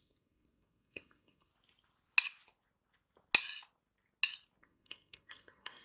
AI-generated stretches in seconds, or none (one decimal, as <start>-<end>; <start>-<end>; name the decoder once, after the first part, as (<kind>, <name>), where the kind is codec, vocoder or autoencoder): 0.0-1.5 (codec, SNAC); 4.6-5.8